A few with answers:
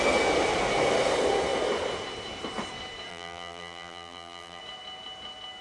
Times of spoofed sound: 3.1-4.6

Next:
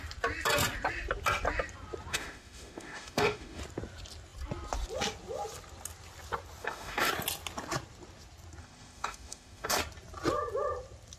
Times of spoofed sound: 2.1-3.6; 6.6-7.1; 8.6-9.8